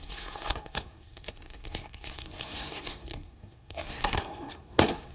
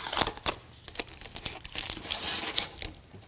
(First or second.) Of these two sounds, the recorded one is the second